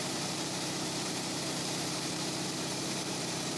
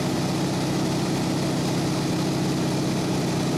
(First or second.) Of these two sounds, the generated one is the first